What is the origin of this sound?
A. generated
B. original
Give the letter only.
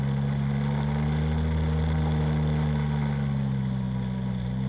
B